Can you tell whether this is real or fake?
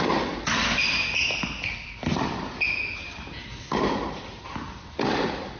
real